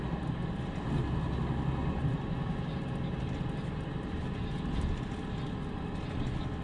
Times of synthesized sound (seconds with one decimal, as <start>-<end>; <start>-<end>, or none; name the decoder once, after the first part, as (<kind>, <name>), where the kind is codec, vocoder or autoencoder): none